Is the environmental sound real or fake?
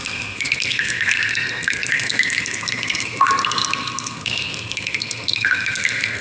fake